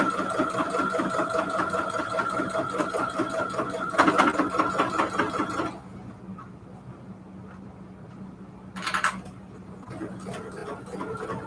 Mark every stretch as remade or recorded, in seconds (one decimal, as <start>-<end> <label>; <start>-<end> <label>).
0.0-11.5 recorded